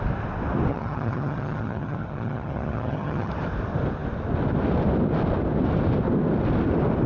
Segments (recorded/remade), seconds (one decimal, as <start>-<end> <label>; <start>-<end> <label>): 0.0-0.7 recorded; 0.7-3.3 remade; 3.3-7.1 recorded